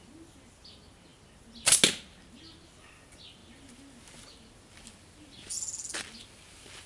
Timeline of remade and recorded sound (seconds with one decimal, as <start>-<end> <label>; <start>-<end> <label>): 0.0-6.9 recorded